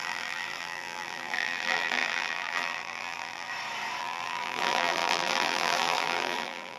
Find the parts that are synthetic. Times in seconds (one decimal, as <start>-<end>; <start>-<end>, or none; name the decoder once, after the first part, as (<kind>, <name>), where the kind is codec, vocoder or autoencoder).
0.0-3.5 (vocoder, BigVGAN v2); 4.0-6.8